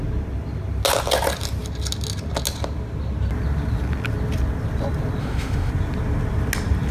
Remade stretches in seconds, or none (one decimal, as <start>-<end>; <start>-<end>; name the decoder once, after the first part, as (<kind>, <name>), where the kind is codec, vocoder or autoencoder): 5.2-5.7 (autoencoder, DAC-VAE)